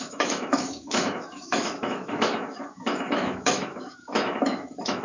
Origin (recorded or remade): remade